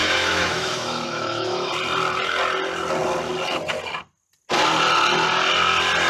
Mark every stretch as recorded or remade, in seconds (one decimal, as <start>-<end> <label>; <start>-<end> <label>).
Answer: 0.0-1.7 remade; 1.7-6.1 recorded